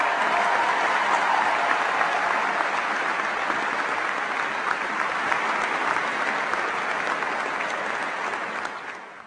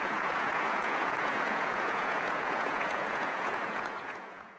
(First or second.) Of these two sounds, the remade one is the second